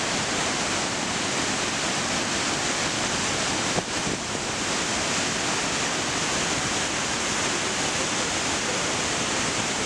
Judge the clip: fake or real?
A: real